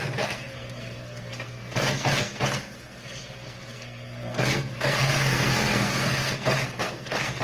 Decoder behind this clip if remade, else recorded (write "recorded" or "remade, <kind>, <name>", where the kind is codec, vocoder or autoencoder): remade, codec, SNAC